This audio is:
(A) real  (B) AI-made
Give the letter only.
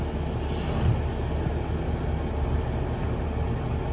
A